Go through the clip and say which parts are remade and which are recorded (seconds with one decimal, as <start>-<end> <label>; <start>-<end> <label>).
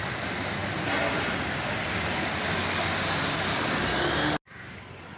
0.0-5.2 recorded